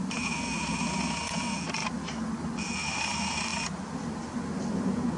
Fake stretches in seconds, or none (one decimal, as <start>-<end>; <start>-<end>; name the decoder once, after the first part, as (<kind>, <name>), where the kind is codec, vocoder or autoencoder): none